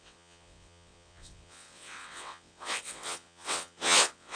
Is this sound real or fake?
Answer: fake